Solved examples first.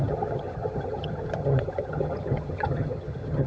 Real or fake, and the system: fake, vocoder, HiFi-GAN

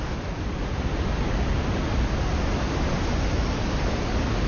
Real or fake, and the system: real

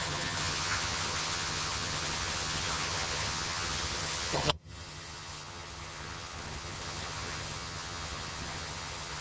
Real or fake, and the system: fake, vocoder, HiFi-GAN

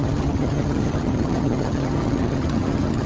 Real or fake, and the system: fake, vocoder, HiFi-GAN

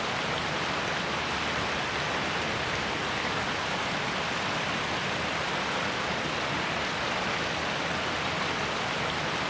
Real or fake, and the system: real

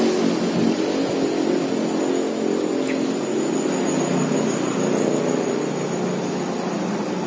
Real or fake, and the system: real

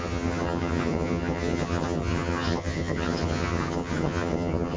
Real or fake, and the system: fake, vocoder, HiFi-GAN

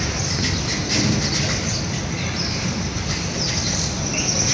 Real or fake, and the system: real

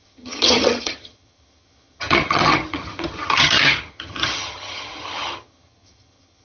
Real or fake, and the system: fake, vocoder, HiFi-GAN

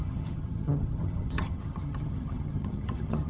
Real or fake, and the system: fake, vocoder, HiFi-GAN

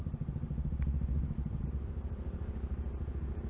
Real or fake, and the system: real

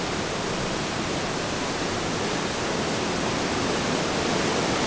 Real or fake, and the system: real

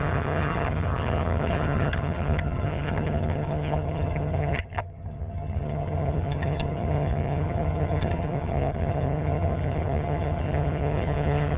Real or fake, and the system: fake, vocoder, HiFi-GAN